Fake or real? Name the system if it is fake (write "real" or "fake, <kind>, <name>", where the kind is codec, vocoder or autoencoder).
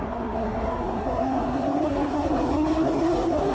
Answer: fake, codec, SNAC